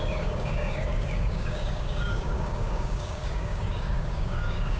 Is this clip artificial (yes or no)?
yes